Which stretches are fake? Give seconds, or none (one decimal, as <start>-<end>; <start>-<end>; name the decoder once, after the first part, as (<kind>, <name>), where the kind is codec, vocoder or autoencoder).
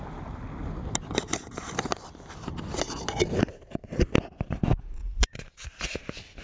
5.0-6.0 (vocoder, Vocos)